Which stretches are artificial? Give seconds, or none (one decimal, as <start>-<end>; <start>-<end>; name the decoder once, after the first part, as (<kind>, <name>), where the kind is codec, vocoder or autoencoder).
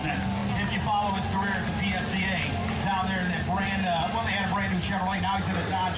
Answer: none